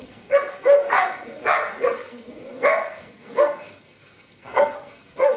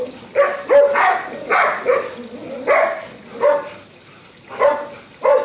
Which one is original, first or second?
second